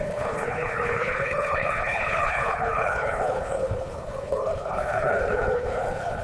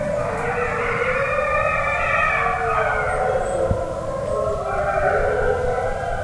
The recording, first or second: second